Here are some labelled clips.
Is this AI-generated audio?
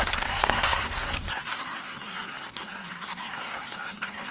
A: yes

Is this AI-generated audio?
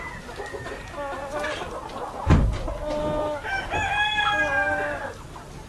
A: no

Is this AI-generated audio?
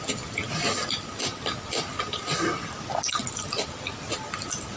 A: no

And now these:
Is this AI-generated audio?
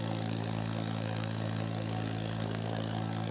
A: yes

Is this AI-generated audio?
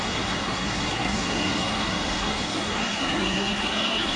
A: yes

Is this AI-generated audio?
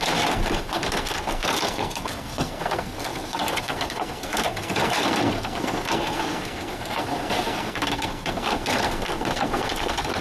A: yes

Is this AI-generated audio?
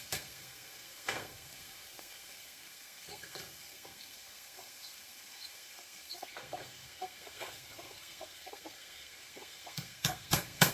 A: yes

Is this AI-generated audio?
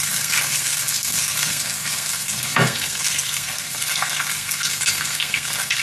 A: yes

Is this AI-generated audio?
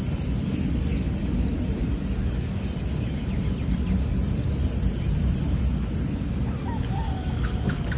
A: no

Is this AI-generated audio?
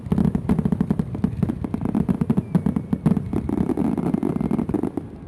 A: no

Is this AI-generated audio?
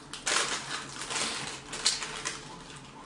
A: no